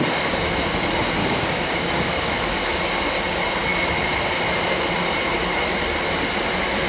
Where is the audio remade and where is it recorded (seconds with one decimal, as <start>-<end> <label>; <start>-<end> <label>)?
0.0-1.2 recorded; 1.2-2.3 remade; 2.3-6.9 recorded